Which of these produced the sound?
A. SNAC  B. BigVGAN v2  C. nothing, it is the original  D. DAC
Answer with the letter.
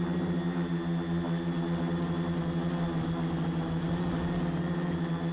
C